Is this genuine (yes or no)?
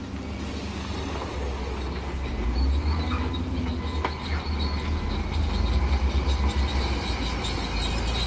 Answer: yes